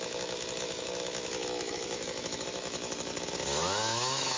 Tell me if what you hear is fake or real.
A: fake